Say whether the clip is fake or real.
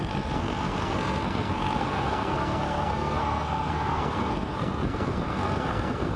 fake